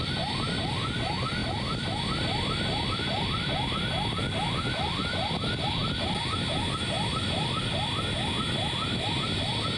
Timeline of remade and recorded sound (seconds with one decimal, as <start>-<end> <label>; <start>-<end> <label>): 0.0-9.8 recorded